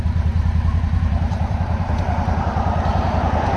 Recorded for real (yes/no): no